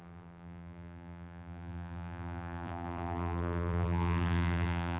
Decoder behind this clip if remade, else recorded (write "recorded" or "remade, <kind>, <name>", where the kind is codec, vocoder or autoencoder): remade, vocoder, BigVGAN v2